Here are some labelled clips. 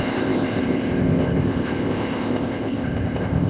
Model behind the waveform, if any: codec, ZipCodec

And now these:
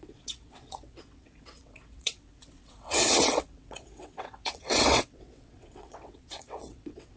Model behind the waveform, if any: vocoder, WaveNeXt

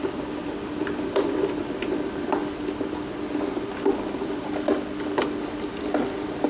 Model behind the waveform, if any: none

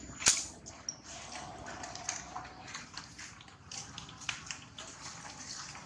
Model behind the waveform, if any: none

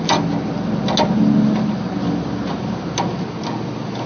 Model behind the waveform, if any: none